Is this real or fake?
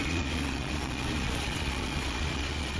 fake